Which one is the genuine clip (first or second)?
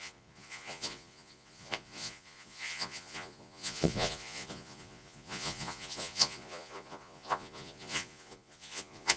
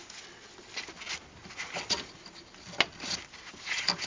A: second